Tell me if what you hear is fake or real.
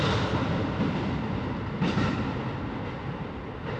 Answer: real